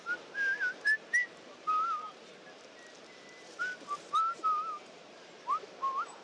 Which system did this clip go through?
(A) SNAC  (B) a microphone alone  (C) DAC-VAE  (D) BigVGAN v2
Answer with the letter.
D